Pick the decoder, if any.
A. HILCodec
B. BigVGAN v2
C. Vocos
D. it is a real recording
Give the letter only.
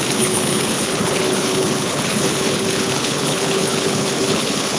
A